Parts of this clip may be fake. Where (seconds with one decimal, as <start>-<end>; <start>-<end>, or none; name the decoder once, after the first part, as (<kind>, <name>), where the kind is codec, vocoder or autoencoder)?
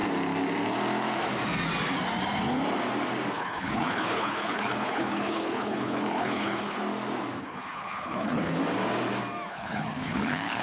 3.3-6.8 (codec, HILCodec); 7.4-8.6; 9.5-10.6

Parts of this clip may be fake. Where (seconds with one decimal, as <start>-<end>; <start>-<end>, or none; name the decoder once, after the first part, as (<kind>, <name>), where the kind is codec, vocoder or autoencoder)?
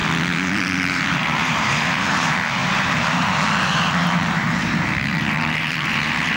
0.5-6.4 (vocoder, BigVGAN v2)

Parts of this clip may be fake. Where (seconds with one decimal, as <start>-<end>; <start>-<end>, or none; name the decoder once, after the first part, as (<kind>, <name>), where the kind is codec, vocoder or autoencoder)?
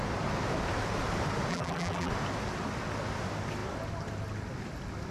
1.5-2.1 (vocoder, BigVGAN v2)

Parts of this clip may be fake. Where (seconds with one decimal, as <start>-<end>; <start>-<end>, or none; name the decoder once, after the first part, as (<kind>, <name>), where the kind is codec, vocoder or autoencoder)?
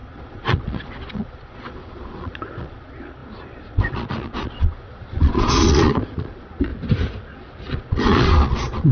0.0-6.7 (vocoder, Vocos); 7.7-8.9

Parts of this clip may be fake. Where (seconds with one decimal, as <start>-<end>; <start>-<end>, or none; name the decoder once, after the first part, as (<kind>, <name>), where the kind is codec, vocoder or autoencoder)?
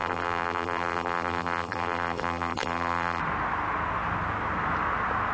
0.0-3.2 (vocoder, BigVGAN v2)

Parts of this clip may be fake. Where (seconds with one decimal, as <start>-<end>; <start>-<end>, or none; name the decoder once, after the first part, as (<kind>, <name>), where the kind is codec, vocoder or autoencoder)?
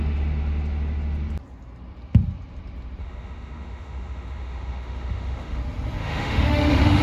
3.0-5.6 (autoencoder, DAC-VAE); 6.0-7.0